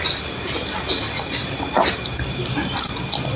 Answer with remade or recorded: recorded